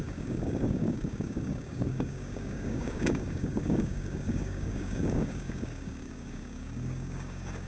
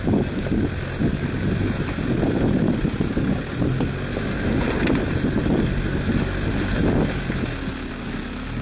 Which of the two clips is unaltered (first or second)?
second